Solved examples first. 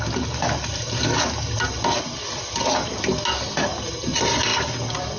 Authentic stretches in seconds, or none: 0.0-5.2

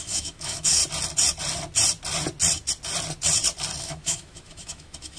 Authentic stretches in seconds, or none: 0.8-3.8

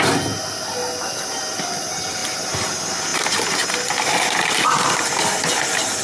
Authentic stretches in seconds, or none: 0.0-6.0

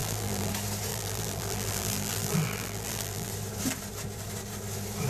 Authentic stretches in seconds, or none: 0.5-0.9; 3.3-5.1

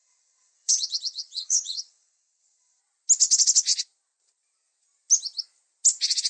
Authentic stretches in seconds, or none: 2.8-6.3

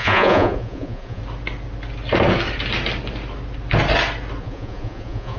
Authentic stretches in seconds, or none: 1.2-4.4